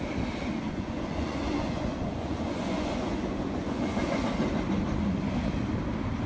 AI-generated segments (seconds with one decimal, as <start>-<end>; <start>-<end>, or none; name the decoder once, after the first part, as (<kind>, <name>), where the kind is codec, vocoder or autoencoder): 0.4-4.2 (vocoder, Vocos)